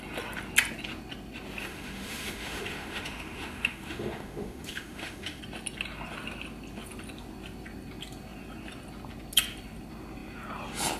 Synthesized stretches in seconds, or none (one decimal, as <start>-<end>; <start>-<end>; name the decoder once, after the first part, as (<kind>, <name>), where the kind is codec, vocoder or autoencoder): 1.6-5.4 (autoencoder, DAC-VAE)